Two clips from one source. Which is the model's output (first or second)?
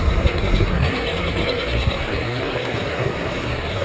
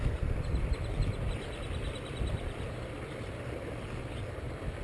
first